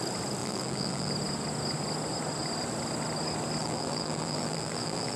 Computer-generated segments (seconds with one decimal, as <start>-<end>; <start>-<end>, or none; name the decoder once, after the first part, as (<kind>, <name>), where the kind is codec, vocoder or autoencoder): 0.4-1.1 (vocoder, BigVGAN v2); 3.6-5.2